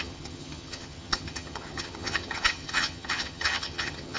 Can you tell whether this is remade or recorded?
remade